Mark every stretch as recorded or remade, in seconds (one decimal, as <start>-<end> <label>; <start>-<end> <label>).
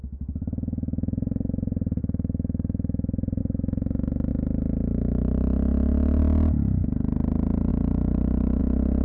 0.0-7.7 recorded; 7.7-8.6 remade; 8.6-9.0 recorded